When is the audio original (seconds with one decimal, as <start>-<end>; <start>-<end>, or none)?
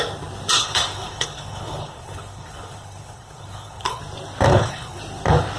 0.0-0.6; 4.0-4.5; 5.0-5.6